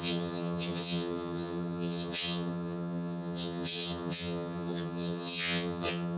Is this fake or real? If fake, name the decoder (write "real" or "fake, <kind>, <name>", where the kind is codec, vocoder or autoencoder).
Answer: fake, vocoder, HiFi-GAN